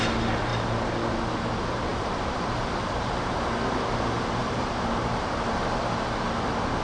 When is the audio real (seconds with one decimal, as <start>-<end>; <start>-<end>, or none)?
0.0-1.9; 2.6-4.4; 5.3-6.8

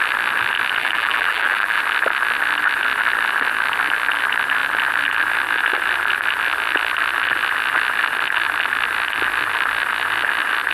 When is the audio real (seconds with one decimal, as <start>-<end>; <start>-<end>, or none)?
0.0-0.8; 1.8-10.7

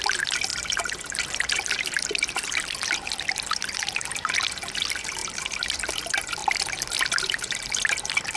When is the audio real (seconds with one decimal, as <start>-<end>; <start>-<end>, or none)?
0.0-0.5; 3.5-5.2; 5.9-6.4; 7.0-8.4

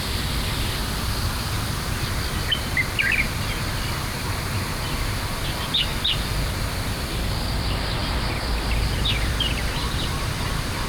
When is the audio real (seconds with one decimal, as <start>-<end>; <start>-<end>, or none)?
0.8-4.9

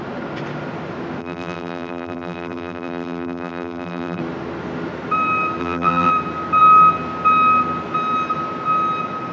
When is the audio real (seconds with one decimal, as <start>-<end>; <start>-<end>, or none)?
0.0-1.2; 4.2-5.6; 6.1-9.3

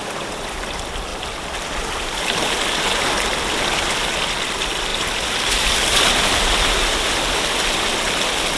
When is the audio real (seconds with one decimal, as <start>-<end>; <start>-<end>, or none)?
0.0-1.1; 2.2-8.6

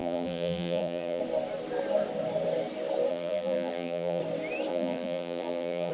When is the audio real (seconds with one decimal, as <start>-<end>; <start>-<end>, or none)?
1.2-3.1; 4.2-4.7